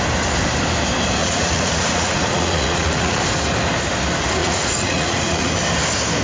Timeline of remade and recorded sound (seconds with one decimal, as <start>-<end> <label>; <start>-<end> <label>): 0.0-1.2 recorded; 1.2-3.2 remade; 3.2-4.4 recorded; 4.4-5.5 remade; 5.5-6.2 recorded